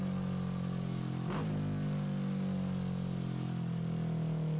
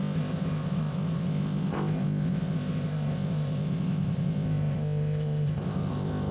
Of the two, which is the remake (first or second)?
second